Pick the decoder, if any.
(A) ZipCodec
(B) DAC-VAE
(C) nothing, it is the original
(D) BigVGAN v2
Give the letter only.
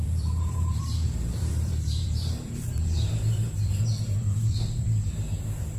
D